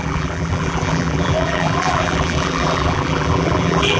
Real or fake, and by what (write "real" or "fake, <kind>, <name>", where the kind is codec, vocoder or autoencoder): fake, vocoder, BigVGAN v2